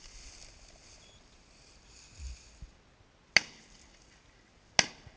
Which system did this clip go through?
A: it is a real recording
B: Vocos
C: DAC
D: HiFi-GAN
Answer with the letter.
A